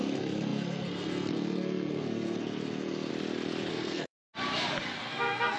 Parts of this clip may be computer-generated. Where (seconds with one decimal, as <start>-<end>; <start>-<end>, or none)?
0.0-3.1; 3.7-4.2; 5.0-5.6